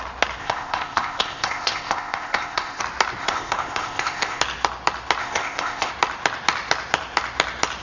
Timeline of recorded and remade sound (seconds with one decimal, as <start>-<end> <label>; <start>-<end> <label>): 0.0-0.4 recorded; 0.4-2.8 remade; 2.8-3.2 recorded; 3.2-4.4 remade; 4.4-5.2 recorded; 5.2-5.9 remade; 5.9-7.8 recorded